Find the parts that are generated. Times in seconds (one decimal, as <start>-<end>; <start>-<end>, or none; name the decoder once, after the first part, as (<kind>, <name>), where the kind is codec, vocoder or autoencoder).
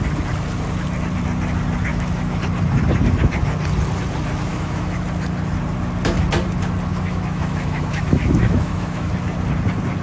1.9-2.4 (autoencoder, DAC-VAE); 4.5-5.0; 6.9-9.1